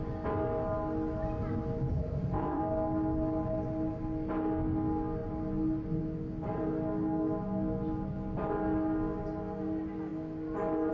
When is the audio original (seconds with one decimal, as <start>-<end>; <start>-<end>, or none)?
0.0-1.9; 2.6-10.9